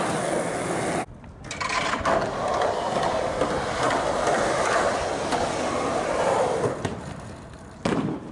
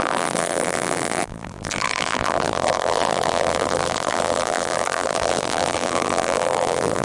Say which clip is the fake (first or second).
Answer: second